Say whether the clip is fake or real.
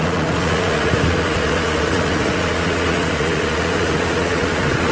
fake